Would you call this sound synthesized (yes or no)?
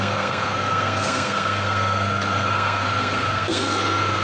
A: yes